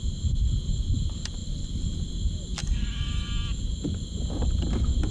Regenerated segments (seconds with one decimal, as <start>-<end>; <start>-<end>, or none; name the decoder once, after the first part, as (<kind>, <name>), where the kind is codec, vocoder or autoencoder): 2.6-3.3 (codec, DAC)